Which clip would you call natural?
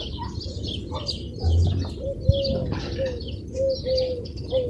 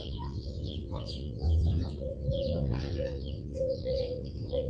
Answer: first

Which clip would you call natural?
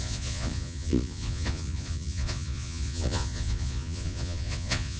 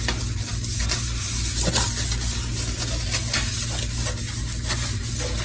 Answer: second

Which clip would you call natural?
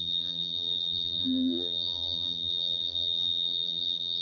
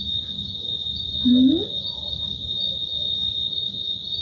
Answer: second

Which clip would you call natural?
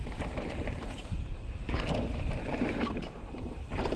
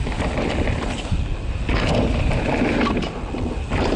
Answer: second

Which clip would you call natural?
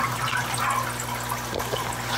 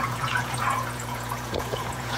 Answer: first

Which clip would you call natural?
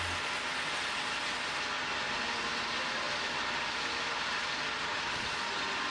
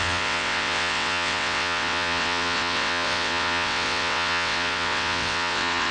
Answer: first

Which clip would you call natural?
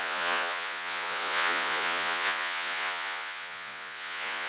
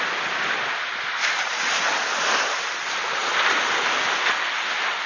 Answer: second